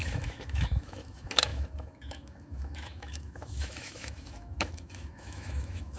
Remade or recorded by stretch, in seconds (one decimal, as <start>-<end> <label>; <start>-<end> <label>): 0.0-6.0 remade